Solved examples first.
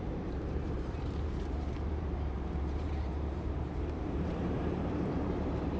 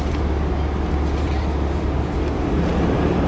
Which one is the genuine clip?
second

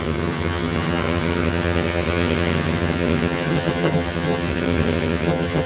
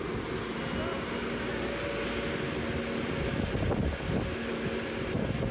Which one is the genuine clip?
second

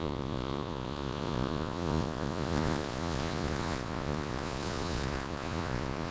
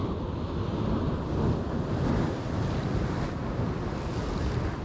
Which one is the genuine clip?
second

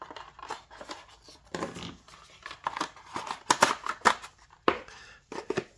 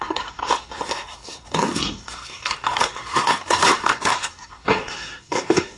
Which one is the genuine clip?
first